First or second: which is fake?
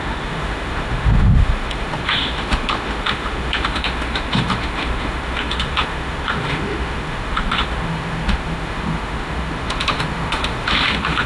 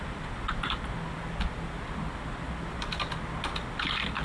first